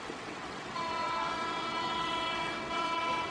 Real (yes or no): no